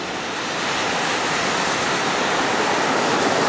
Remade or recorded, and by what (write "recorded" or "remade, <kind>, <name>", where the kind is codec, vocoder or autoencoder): remade, vocoder, BigVGAN v2